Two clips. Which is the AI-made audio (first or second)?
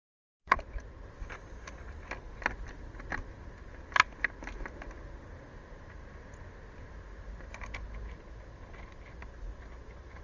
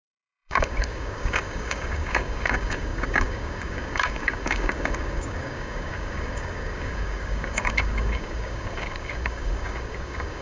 second